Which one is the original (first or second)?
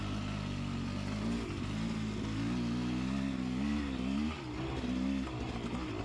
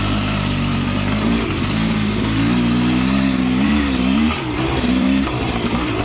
first